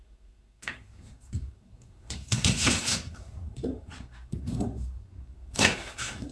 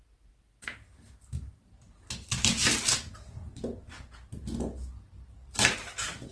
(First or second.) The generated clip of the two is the first